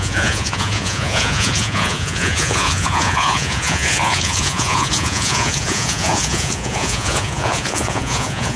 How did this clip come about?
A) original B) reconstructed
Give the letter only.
B